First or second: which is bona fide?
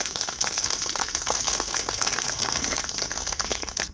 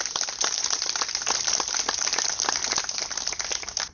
second